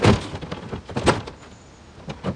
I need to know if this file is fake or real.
real